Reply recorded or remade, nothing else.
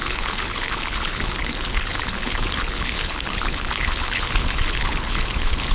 remade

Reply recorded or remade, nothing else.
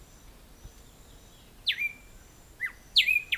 recorded